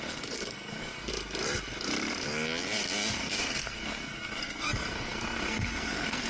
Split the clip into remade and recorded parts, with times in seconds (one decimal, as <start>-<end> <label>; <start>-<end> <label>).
0.0-1.1 remade; 1.1-3.2 recorded; 3.2-6.3 remade